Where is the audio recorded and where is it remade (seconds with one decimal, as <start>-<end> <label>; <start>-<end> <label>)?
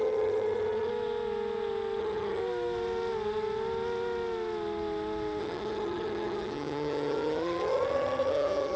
0.0-0.9 remade; 0.9-2.0 recorded; 2.0-2.4 remade; 2.4-5.4 recorded; 5.4-8.8 remade